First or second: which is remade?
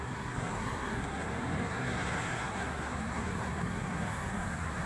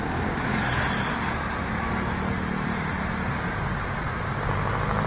first